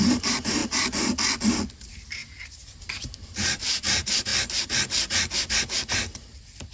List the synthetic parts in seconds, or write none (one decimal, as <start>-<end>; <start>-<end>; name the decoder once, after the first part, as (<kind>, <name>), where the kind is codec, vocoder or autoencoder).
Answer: 0.0-0.6 (vocoder, BigVGAN v2); 1.8-4.3